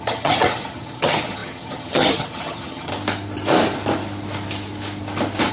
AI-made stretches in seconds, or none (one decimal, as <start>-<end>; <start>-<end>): 0.0-2.9